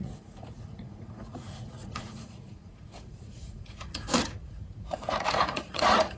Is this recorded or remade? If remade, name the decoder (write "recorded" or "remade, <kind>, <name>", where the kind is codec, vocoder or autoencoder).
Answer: remade, vocoder, Vocos